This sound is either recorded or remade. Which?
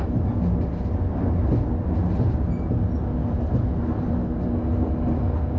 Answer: recorded